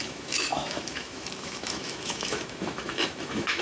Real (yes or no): no